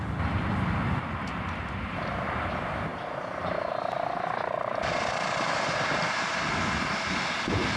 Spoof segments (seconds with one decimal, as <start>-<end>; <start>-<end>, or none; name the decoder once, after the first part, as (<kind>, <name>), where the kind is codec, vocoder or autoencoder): 2.9-6.4 (vocoder, BigVGAN v2)